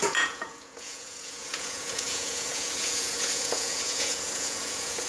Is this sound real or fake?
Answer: fake